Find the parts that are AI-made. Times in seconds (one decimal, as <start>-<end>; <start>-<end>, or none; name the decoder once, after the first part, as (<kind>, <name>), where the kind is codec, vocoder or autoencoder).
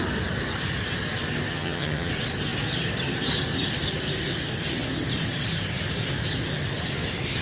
1.5-2.1 (vocoder, HiFi-GAN)